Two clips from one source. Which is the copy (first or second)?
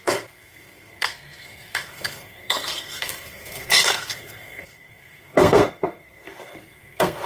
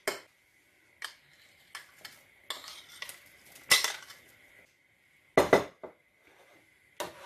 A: first